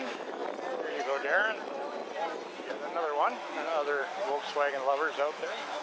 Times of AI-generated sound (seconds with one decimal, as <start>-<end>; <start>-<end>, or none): 0.0-0.4; 1.0-2.0; 3.0-4.0; 4.7-5.8